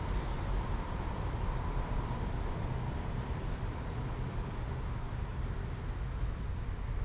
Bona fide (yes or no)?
yes